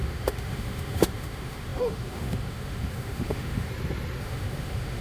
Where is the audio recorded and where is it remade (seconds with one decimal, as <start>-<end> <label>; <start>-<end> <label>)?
0.0-3.7 remade; 3.7-4.2 recorded; 4.2-5.0 remade